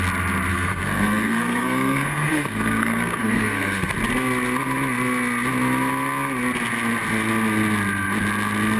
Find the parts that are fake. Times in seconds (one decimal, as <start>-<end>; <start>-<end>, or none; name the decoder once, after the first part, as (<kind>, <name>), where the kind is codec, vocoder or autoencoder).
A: 0.5-3.9 (codec, SNAC)